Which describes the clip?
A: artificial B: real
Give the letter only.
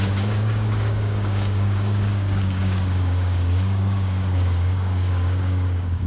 A